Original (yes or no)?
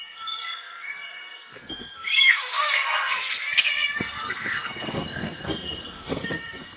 no